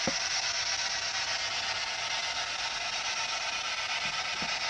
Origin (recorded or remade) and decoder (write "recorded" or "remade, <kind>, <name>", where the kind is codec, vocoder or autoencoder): recorded